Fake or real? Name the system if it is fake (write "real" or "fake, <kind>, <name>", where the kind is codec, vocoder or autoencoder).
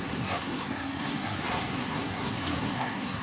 fake, codec, SNAC